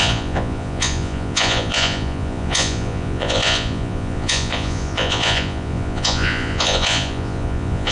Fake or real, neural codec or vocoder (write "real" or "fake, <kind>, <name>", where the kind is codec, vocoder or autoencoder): fake, vocoder, Vocos